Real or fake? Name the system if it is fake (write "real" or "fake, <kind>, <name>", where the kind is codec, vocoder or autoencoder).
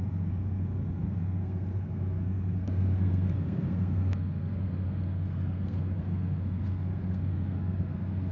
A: fake, codec, SNAC